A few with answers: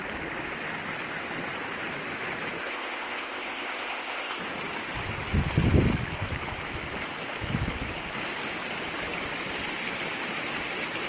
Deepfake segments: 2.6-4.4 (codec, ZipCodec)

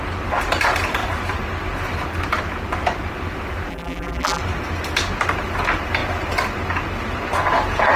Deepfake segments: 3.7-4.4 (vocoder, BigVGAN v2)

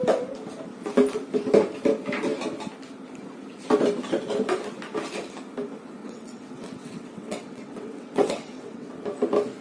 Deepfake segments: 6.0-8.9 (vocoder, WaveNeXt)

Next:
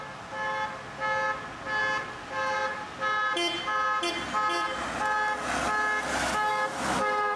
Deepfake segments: none

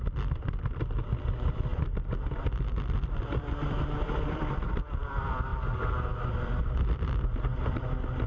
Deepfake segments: 0.0-5.5 (vocoder, BigVGAN v2); 6.1-7.5